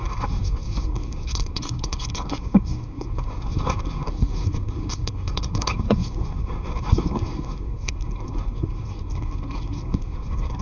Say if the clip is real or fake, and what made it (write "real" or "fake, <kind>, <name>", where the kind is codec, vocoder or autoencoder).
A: fake, codec, SNAC